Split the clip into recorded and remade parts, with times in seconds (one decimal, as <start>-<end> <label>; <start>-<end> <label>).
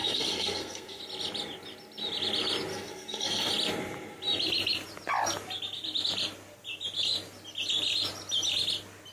0.0-1.0 remade; 1.0-2.7 recorded; 2.7-3.5 remade; 3.5-9.1 recorded